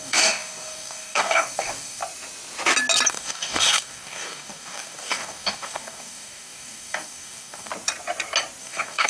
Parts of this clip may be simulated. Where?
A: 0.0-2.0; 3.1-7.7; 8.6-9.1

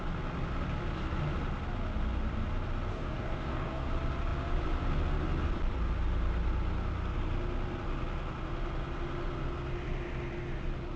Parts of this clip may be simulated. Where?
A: 2.9-3.9

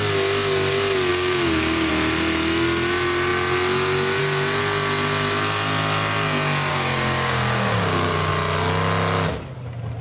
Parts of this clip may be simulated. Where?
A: 1.1-1.9; 6.7-8.3

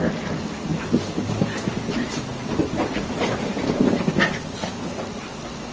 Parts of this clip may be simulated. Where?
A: none

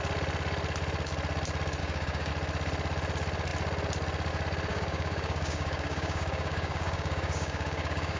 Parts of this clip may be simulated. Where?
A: 1.8-2.3; 4.7-8.2